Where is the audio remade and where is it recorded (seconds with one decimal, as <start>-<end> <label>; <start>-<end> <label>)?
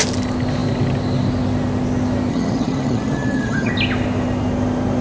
0.0-2.3 recorded; 2.3-3.7 remade; 3.7-5.0 recorded